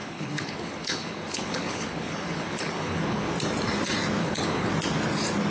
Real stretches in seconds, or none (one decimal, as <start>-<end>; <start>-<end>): 3.3-4.2; 4.7-5.5